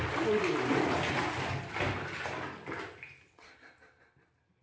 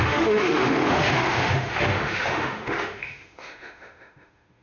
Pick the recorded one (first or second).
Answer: first